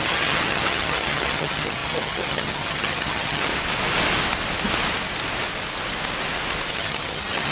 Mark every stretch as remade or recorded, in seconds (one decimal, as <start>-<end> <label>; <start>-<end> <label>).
0.0-3.5 remade; 3.5-6.7 recorded; 6.7-7.5 remade